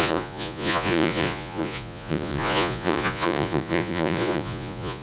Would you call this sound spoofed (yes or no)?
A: yes